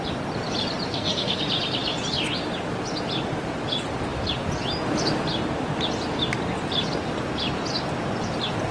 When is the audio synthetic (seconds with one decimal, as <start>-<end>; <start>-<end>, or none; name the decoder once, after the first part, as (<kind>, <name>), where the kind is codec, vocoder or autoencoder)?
0.9-1.4 (codec, SNAC)